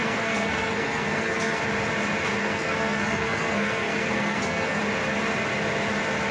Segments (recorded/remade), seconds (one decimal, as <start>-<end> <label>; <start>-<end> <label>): 0.0-1.6 remade; 1.6-2.4 recorded; 2.4-4.8 remade; 4.8-6.3 recorded